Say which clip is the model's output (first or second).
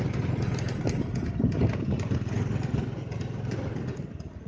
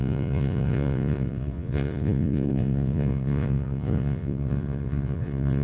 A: second